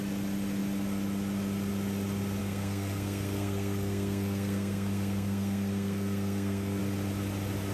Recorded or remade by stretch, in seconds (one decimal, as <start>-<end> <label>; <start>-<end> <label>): 0.0-2.4 recorded; 2.4-6.8 remade; 6.8-7.7 recorded